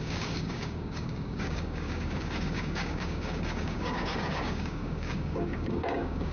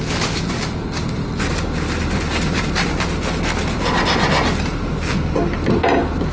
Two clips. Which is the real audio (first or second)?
second